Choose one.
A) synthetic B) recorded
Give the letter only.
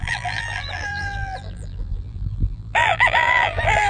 A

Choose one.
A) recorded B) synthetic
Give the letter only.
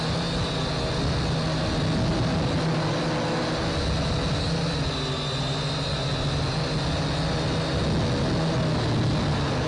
A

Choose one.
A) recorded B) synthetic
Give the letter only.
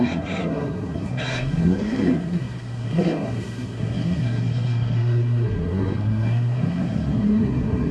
B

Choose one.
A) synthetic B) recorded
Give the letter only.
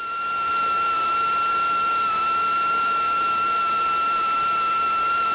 B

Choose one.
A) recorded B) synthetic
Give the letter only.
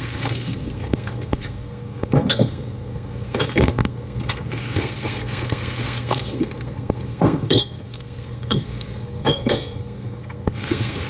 B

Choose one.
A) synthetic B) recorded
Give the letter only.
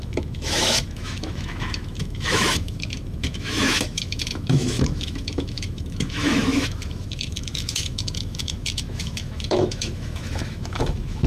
A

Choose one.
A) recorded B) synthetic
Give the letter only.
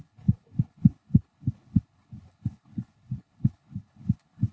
B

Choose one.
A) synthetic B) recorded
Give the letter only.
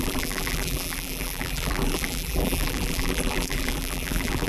A